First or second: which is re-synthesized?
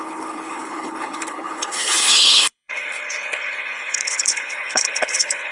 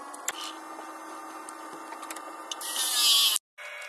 first